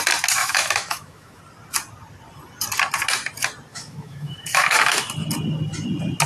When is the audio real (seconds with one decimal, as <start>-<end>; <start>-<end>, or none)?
0.0-0.4; 1.4-3.7; 5.1-6.3